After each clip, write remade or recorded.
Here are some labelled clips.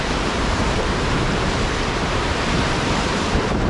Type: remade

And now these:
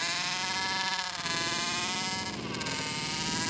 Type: recorded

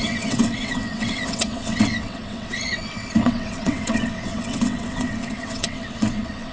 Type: remade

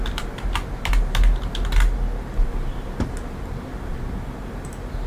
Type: recorded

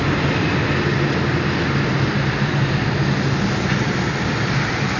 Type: recorded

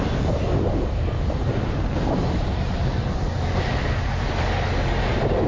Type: recorded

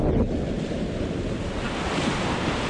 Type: recorded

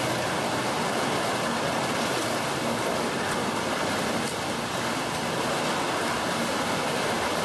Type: recorded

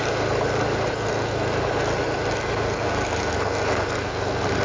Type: recorded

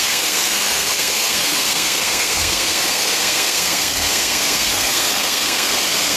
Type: remade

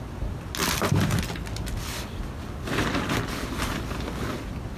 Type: recorded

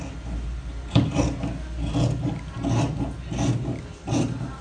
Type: recorded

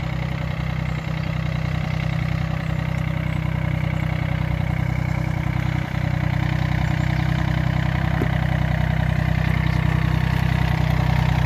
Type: recorded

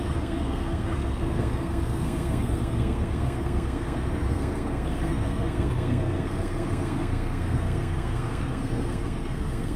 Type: remade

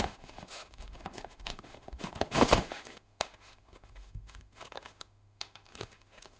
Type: remade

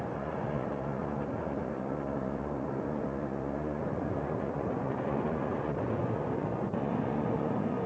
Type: remade